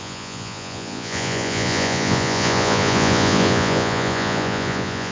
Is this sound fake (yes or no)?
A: yes